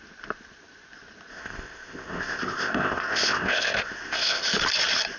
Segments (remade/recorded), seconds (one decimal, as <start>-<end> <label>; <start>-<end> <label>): 0.0-1.3 recorded; 1.3-4.4 remade; 4.4-5.2 recorded